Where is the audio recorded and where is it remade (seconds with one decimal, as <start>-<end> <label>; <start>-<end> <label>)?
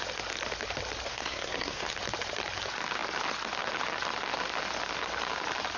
0.0-1.1 recorded; 1.1-1.9 remade; 1.9-5.8 recorded